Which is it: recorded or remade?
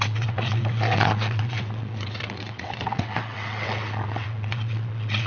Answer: remade